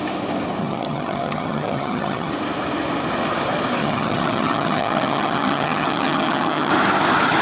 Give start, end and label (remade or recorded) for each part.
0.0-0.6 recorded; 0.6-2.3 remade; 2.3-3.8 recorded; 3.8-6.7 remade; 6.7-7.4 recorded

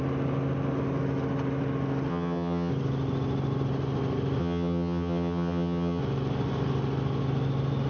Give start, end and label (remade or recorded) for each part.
0.0-2.1 recorded; 2.1-2.7 remade; 2.7-4.4 recorded; 4.4-6.0 remade; 6.0-7.9 recorded

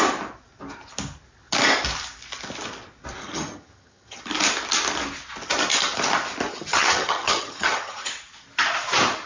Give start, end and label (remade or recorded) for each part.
0.0-3.2 recorded; 3.2-4.2 remade; 4.2-6.5 recorded; 6.5-8.1 remade; 8.1-9.3 recorded

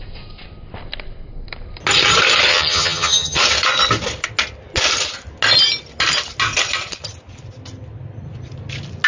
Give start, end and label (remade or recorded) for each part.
0.0-2.5 recorded; 2.5-3.4 remade; 3.4-9.1 recorded

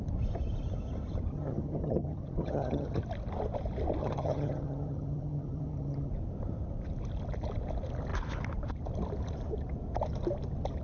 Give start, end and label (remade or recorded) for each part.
0.0-1.3 recorded; 1.3-3.0 remade; 3.0-4.0 recorded; 4.0-6.1 remade; 6.1-10.8 recorded

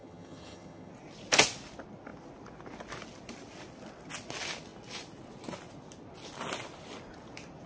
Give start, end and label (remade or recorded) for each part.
0.0-0.9 remade; 0.9-7.7 recorded